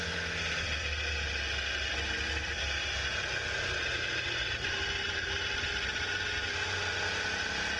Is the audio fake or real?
real